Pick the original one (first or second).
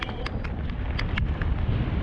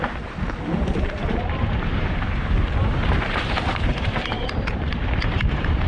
first